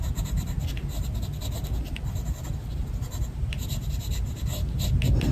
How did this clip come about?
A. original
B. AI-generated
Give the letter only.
A